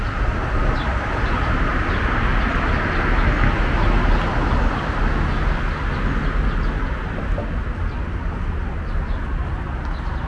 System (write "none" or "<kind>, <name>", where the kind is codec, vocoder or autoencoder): none